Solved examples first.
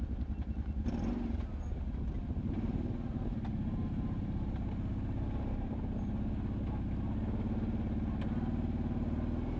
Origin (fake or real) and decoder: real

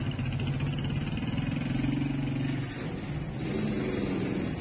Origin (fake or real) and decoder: real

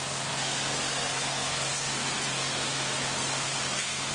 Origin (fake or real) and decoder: fake, codec, SNAC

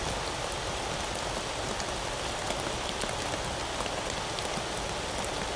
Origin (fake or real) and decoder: real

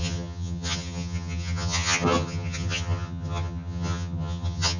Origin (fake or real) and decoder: fake, vocoder, HiFi-GAN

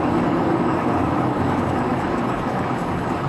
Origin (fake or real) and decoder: fake, codec, DAC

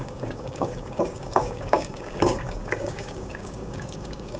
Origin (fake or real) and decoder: fake, codec, DAC